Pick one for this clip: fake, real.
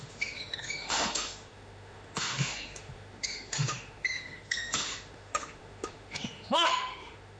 fake